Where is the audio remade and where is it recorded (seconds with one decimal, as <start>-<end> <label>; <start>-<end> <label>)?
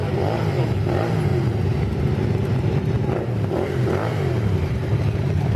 0.0-5.6 recorded